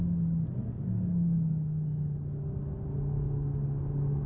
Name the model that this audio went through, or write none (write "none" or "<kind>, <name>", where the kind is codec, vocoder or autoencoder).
none